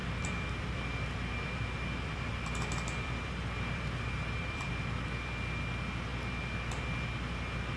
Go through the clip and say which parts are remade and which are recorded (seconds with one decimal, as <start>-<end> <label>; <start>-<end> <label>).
0.0-4.7 remade; 4.7-7.8 recorded